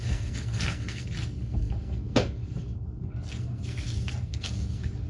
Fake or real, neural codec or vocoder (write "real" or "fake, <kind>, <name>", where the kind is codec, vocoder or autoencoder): fake, codec, SNAC